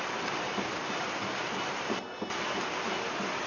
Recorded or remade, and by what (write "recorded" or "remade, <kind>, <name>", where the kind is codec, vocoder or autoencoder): recorded